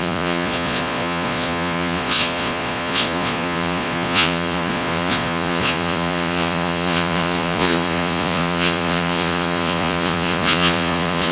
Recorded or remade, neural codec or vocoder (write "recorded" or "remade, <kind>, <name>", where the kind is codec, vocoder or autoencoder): remade, vocoder, Vocos